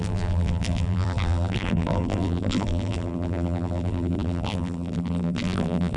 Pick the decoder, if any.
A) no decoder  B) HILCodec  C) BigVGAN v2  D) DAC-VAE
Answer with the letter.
C